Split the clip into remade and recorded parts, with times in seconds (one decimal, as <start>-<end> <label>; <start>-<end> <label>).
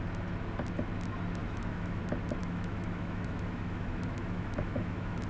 0.0-1.4 recorded; 1.4-2.0 remade; 2.0-2.4 recorded; 2.4-5.3 remade